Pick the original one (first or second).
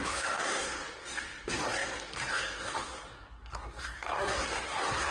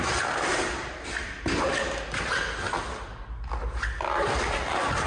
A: second